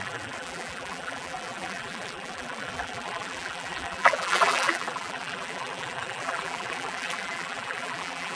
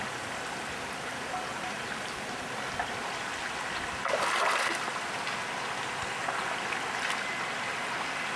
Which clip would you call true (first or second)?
second